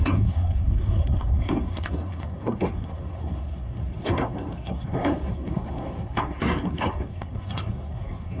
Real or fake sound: fake